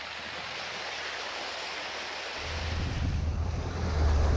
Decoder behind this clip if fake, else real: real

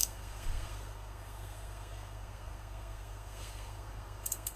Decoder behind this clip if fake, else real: fake, codec, SNAC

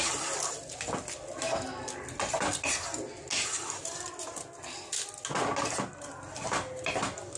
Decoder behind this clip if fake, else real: real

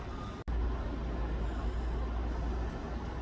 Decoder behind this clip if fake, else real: real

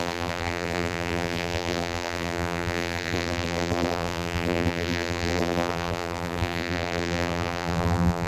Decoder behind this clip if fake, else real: fake, vocoder, BigVGAN v2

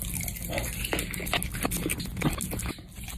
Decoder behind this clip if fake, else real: real